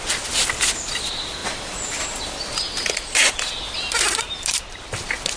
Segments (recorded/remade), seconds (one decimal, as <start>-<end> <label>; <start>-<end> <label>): 0.0-5.4 recorded